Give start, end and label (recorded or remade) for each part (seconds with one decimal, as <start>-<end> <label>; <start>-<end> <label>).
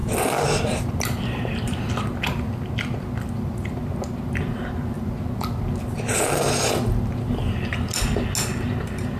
0.0-1.9 remade; 1.9-9.2 recorded